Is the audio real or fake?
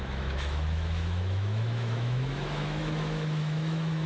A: fake